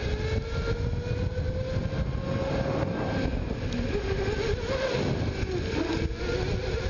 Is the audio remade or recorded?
recorded